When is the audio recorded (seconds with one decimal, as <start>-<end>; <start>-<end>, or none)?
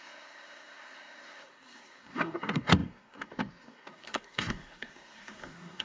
none